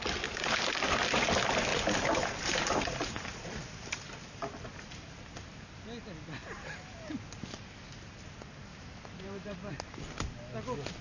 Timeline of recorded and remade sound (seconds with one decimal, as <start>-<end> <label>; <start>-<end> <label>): 0.0-1.7 recorded; 1.7-4.6 remade; 4.6-8.7 recorded; 8.7-9.7 remade; 9.7-11.0 recorded